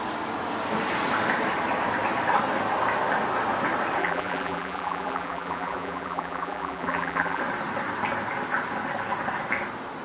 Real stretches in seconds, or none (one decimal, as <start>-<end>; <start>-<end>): 0.0-4.0; 7.4-10.0